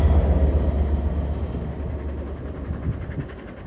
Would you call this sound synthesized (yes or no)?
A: no